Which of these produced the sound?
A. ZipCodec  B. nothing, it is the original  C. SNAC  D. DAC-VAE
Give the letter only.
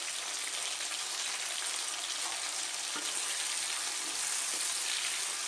B